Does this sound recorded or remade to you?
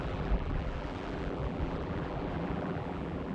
remade